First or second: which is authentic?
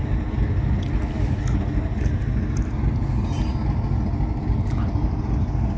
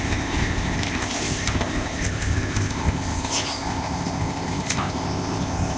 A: first